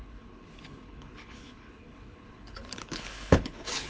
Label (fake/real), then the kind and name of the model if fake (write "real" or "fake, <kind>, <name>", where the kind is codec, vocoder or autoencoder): fake, codec, HILCodec